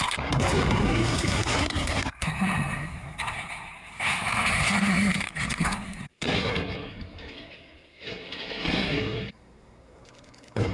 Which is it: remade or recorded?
remade